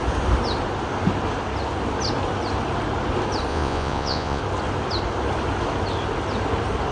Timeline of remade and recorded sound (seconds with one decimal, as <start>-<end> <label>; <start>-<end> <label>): 0.0-3.5 recorded; 3.5-4.4 remade; 4.4-6.9 recorded